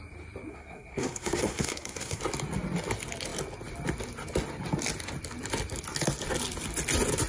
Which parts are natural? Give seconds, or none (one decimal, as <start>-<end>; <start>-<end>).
0.0-0.5; 2.2-7.3